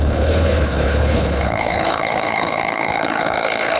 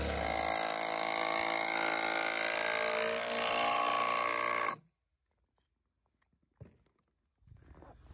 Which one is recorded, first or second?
second